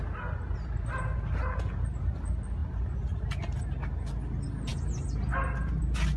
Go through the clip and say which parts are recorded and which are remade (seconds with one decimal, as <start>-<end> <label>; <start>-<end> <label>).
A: 0.0-6.2 recorded